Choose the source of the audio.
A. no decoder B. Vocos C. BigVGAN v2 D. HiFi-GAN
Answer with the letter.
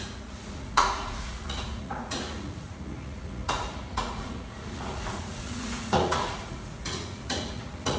B